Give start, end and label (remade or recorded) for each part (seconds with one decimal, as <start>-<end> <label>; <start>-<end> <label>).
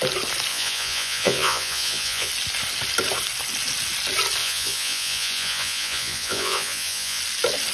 0.0-0.5 recorded; 0.5-2.3 remade; 2.3-4.4 recorded; 4.4-7.2 remade; 7.2-7.7 recorded